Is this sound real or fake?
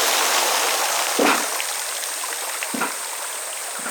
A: real